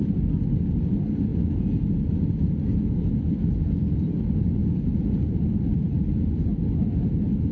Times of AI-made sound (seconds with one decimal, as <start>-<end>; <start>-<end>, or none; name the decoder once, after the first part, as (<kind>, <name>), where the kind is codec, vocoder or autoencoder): 1.3-3.2 (vocoder, Vocos); 4.6-5.3